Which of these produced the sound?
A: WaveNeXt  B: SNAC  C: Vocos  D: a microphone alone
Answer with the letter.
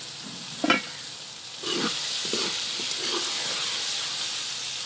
D